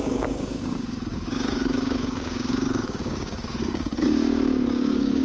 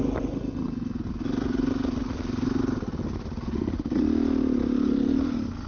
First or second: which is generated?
first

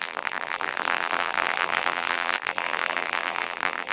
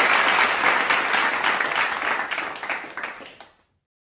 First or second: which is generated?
first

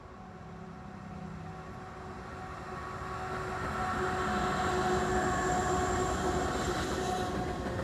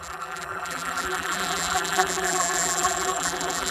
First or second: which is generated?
second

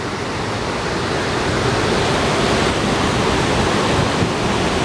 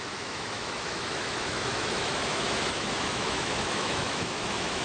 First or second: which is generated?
second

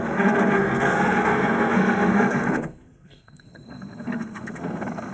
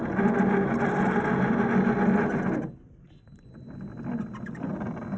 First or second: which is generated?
first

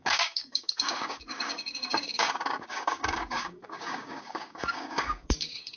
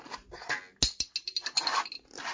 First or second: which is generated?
first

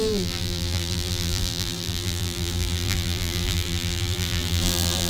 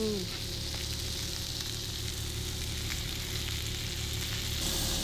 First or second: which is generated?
first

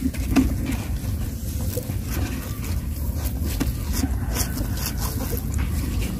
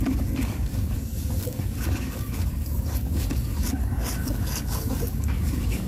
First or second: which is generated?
second